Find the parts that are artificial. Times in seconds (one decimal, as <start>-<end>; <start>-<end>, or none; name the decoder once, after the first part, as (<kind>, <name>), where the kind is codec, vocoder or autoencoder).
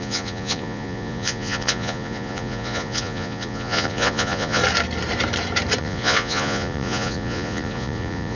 0.0-4.6 (vocoder, Vocos); 5.8-8.3